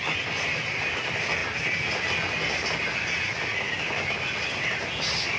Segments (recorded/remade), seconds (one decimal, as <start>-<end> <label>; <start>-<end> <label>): 0.0-5.4 recorded